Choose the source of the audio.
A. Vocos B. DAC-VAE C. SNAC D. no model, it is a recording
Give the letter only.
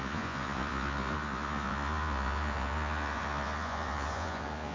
A